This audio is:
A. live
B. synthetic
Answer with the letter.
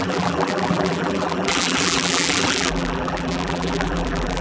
B